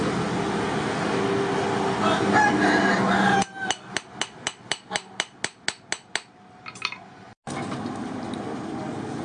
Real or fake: real